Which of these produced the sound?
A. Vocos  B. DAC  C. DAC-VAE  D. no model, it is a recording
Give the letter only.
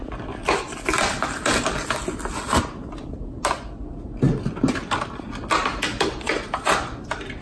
D